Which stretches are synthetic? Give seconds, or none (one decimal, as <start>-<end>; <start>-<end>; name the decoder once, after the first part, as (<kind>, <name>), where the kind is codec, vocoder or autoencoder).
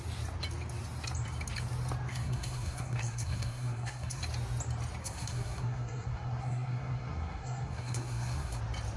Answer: 2.1-4.2 (codec, SNAC); 5.0-8.6